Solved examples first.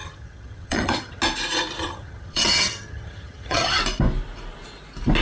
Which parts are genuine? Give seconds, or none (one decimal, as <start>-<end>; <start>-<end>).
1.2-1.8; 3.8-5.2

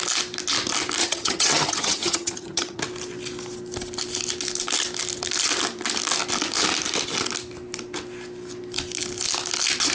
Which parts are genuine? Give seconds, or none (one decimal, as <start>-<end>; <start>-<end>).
0.0-1.0; 2.8-9.9

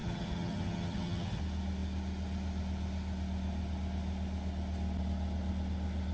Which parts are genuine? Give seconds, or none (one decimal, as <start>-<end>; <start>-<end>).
1.4-6.1